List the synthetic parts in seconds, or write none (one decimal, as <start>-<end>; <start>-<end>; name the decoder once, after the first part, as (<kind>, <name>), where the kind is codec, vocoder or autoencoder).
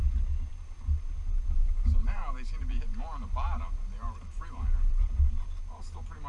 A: 1.3-5.0 (vocoder, BigVGAN v2)